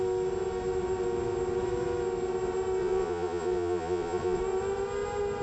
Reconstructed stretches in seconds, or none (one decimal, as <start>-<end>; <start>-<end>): 2.8-4.4